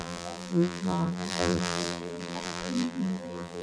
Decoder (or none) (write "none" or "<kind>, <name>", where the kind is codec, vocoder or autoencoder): vocoder, BigVGAN v2